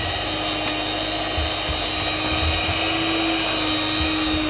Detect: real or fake real